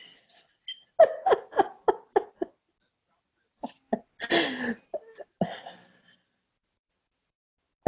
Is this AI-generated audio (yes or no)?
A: no